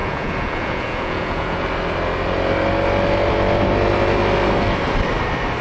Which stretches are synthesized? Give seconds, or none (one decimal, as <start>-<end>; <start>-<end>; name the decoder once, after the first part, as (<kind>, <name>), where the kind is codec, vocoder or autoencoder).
0.0-1.6 (vocoder, Vocos)